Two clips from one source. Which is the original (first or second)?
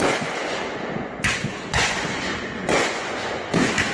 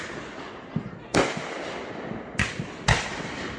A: second